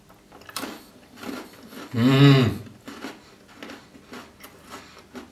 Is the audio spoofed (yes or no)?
no